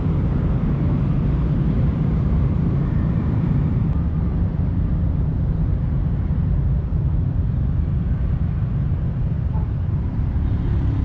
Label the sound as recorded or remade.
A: remade